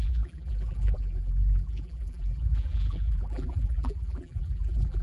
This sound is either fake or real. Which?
fake